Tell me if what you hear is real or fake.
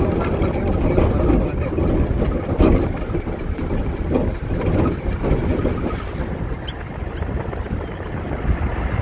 real